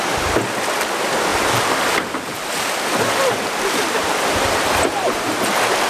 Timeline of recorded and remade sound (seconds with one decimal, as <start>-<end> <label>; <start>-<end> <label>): 0.0-1.3 recorded; 1.3-4.8 remade; 4.8-5.9 recorded